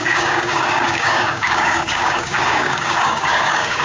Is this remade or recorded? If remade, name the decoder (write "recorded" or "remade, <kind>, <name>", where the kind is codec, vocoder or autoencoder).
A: remade, codec, DAC